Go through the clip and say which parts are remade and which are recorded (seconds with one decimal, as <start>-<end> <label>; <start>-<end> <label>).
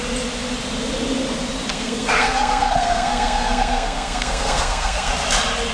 0.0-1.7 recorded; 1.7-5.1 remade; 5.1-5.7 recorded